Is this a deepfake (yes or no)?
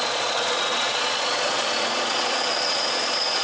yes